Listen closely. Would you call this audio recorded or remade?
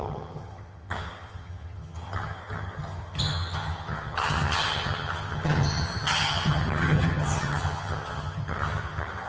remade